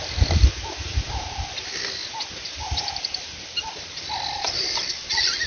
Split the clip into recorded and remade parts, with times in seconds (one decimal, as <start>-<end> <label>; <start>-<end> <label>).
0.0-2.0 recorded; 2.0-5.5 remade